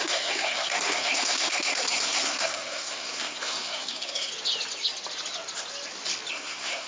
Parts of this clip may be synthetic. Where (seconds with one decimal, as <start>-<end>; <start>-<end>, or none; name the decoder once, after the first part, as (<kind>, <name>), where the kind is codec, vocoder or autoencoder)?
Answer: 0.0-4.3 (codec, SNAC); 6.3-6.9